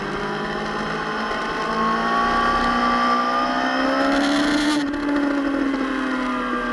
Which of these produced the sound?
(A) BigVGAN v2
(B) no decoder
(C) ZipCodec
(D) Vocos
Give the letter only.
B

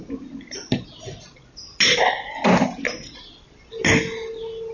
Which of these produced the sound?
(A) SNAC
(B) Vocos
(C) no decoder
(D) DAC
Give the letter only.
C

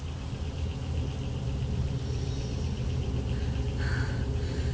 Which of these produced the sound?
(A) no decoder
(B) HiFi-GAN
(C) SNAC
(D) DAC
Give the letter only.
A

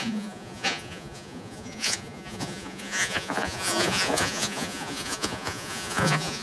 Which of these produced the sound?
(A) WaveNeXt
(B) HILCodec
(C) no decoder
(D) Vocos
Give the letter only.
D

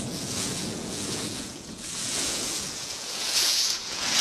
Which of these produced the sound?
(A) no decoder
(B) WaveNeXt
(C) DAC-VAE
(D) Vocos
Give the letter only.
D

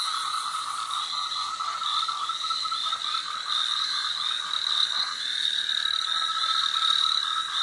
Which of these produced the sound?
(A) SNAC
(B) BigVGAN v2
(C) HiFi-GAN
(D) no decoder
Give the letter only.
D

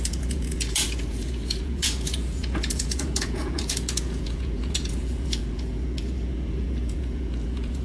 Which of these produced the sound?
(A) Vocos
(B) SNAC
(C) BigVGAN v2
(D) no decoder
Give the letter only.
A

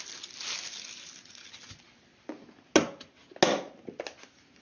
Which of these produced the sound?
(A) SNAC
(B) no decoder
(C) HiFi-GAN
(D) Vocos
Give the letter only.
B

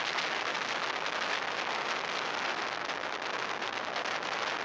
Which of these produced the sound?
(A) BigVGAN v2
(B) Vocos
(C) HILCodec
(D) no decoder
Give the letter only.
D